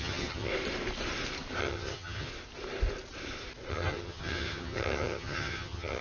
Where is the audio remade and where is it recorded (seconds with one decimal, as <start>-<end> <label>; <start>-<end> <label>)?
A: 0.0-0.5 remade; 0.5-1.6 recorded; 1.6-2.3 remade; 2.3-3.7 recorded; 3.7-6.0 remade

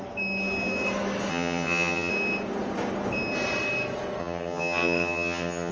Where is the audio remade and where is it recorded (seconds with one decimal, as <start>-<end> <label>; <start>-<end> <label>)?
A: 0.0-1.3 recorded; 1.3-2.1 remade; 2.1-4.2 recorded; 4.2-5.7 remade

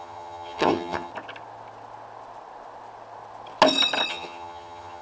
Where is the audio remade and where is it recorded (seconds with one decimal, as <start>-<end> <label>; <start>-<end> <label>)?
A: 0.0-1.1 remade; 1.1-4.1 recorded; 4.1-5.0 remade